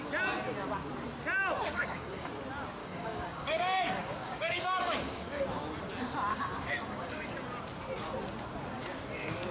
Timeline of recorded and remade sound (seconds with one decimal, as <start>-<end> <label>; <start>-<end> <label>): 0.0-1.7 recorded; 1.7-2.3 remade; 2.3-2.8 recorded; 2.8-5.4 remade; 5.4-6.3 recorded; 6.3-7.3 remade; 7.3-9.5 recorded